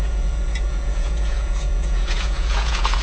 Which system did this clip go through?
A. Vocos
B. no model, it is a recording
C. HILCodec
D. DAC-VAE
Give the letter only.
A